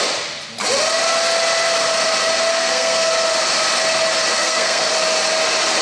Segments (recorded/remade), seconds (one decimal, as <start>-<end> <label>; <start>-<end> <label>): 0.0-2.5 recorded; 2.5-3.1 remade; 3.1-4.4 recorded; 4.4-4.9 remade; 4.9-5.8 recorded